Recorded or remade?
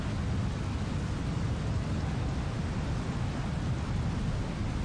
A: recorded